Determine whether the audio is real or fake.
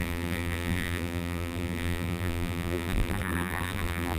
fake